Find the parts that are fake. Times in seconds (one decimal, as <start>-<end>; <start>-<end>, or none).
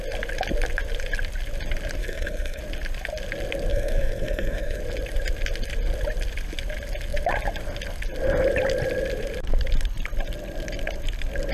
2.0-2.6; 3.7-4.8